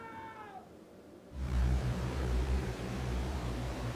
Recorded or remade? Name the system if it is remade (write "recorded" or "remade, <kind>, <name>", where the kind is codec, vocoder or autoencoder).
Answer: remade, vocoder, BigVGAN v2